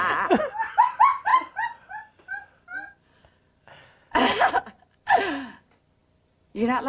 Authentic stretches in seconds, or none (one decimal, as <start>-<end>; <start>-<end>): 0.0-6.9